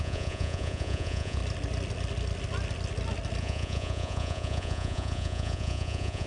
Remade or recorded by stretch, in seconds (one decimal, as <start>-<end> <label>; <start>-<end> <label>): 0.0-1.4 remade; 1.4-3.4 recorded; 3.4-6.3 remade